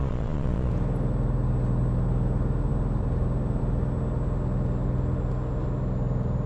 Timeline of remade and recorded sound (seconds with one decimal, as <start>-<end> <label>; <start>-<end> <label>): 0.0-0.7 remade; 0.7-6.5 recorded